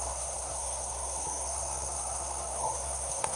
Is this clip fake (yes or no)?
yes